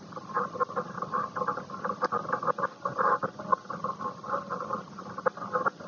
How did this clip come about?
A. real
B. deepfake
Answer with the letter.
A